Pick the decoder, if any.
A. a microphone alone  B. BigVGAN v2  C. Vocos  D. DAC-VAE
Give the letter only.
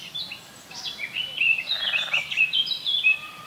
A